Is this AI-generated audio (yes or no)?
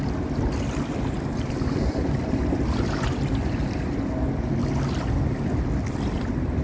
no